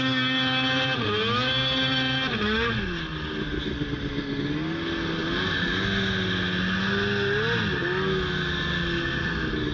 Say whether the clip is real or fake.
real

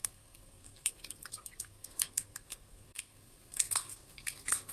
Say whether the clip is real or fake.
fake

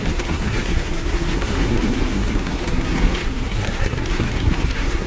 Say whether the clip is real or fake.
fake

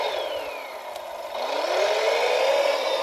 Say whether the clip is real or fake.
real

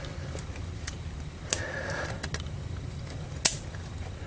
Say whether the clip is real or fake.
real